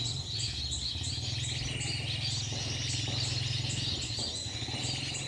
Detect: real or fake real